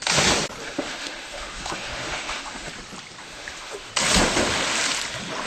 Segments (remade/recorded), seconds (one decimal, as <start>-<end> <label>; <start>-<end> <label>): 0.0-0.6 recorded; 0.6-2.7 remade; 2.7-3.2 recorded; 3.2-3.9 remade; 3.9-5.5 recorded